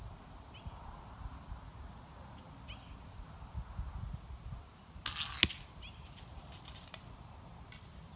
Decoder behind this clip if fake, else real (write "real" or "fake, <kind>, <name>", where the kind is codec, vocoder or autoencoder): real